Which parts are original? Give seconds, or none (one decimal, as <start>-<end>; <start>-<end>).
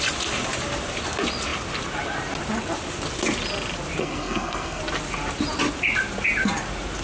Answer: 0.0-4.0; 4.8-7.0